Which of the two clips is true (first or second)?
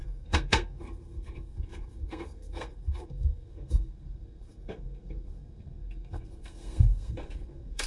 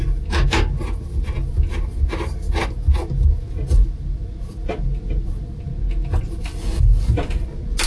second